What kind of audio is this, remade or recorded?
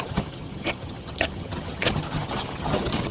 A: remade